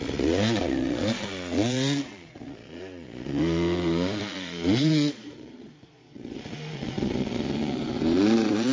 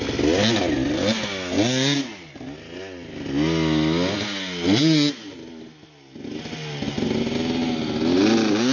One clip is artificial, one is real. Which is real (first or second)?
second